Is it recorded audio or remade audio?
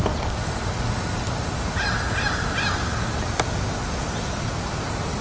recorded